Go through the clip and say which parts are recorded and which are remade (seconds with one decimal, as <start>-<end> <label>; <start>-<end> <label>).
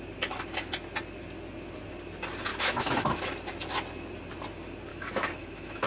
0.0-2.5 recorded; 2.5-3.2 remade; 3.2-4.9 recorded; 4.9-5.9 remade